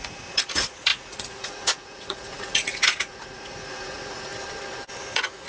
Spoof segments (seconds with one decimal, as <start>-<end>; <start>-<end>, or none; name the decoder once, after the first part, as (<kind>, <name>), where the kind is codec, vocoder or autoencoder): 0.0-4.3 (vocoder, Vocos); 5.0-5.5